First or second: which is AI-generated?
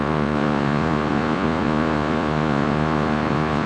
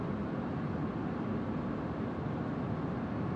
first